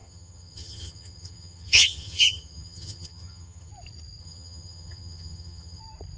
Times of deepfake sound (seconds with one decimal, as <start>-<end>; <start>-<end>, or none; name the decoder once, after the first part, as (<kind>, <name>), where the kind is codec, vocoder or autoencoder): 0.0-3.7 (vocoder, HiFi-GAN); 4.2-5.8